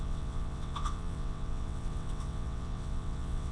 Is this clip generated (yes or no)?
yes